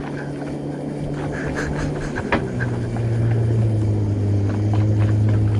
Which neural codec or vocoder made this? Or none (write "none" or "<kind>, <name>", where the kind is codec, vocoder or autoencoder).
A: none